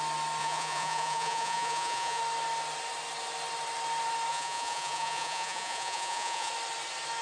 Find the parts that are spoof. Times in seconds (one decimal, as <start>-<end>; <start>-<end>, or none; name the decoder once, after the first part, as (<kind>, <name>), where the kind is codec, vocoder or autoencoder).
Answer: 0.4-2.2 (vocoder, Vocos); 4.3-6.5